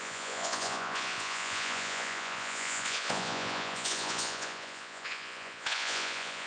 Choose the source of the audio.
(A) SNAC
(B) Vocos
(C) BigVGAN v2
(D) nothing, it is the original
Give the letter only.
B